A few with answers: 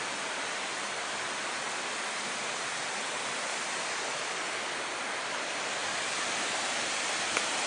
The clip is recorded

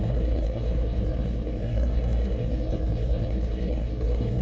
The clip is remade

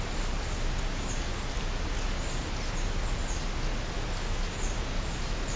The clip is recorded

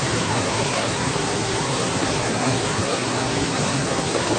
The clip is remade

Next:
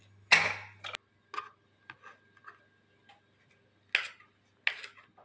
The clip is recorded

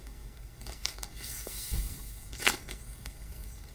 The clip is remade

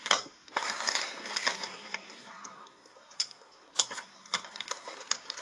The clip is remade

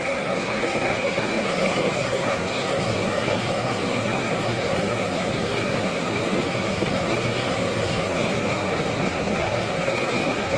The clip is remade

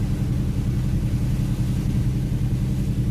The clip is recorded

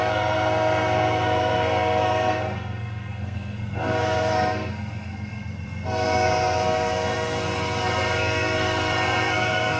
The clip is remade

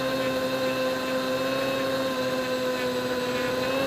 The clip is recorded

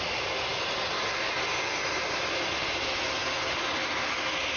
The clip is recorded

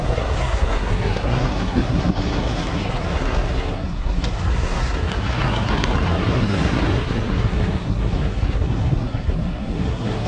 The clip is remade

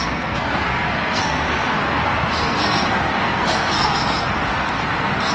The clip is remade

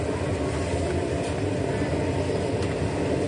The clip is recorded